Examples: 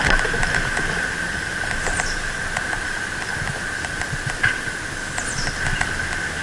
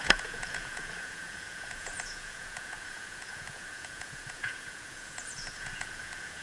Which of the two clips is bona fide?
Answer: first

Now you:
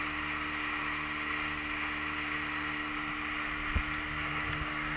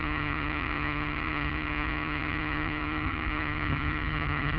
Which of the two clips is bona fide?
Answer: first